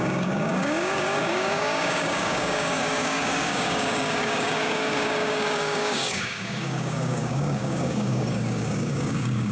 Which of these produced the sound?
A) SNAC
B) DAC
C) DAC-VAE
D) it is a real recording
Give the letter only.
B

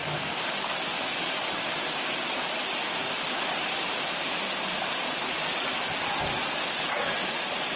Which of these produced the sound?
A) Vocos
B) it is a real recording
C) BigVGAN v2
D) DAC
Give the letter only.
B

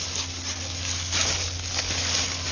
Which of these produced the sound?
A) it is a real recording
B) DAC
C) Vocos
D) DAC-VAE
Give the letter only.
A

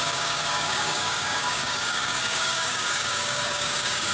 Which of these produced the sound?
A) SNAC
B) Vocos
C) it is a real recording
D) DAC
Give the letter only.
D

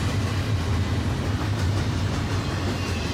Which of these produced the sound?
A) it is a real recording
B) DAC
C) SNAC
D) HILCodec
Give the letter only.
A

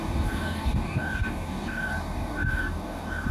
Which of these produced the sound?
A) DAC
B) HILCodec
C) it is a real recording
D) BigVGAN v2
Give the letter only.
A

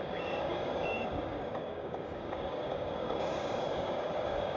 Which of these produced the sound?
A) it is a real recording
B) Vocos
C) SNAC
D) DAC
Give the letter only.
D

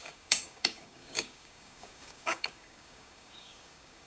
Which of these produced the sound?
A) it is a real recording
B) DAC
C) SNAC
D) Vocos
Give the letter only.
B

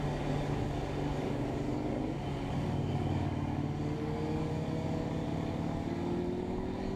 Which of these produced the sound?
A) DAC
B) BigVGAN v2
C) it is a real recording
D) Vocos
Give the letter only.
A